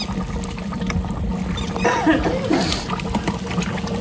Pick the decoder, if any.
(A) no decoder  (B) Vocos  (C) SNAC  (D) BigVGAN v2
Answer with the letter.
A